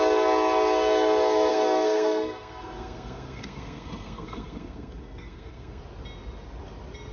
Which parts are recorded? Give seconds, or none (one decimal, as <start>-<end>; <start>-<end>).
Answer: 0.0-1.5; 5.8-7.1